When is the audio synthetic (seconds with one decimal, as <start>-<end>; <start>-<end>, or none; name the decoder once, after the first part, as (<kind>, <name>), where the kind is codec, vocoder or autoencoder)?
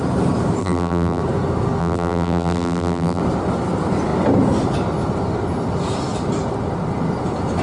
0.6-1.2 (vocoder, BigVGAN v2); 1.8-3.2